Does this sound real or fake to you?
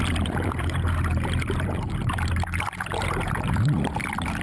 fake